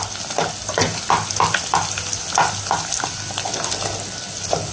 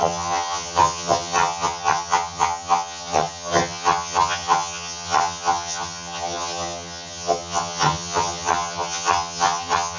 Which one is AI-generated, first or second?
second